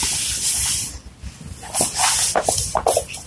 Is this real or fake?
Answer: real